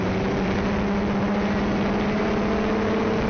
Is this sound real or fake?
real